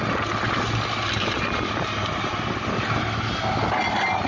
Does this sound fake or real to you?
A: real